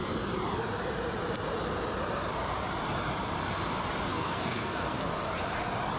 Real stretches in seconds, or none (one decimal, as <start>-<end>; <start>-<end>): 0.0-4.1; 5.1-6.0